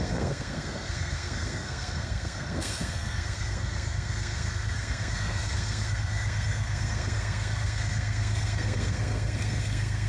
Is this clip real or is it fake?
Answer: fake